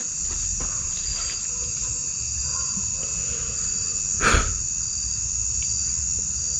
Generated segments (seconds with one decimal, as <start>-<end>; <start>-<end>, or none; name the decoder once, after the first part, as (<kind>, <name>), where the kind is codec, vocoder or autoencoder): none